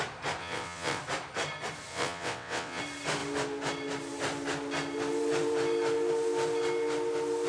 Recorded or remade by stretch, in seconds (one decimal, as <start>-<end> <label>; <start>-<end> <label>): 0.0-0.4 recorded; 0.4-1.0 remade; 1.0-1.9 recorded; 1.9-2.8 remade; 2.8-7.5 recorded